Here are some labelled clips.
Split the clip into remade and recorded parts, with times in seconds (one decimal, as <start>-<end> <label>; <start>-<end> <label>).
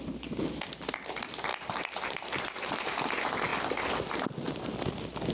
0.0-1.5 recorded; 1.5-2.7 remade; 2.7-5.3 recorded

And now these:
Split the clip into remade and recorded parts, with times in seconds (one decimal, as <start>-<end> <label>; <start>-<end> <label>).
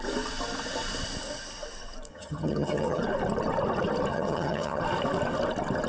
0.0-2.1 recorded; 2.1-3.0 remade; 3.0-4.1 recorded; 4.1-4.8 remade; 4.8-5.9 recorded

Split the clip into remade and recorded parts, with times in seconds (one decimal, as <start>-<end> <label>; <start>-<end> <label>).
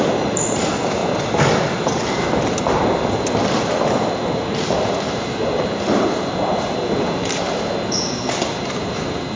0.0-1.0 remade; 1.0-2.6 recorded; 2.6-9.4 remade